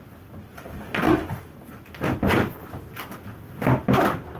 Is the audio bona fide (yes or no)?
yes